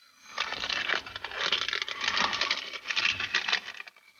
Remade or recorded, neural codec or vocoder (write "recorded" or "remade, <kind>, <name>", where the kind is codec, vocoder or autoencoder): recorded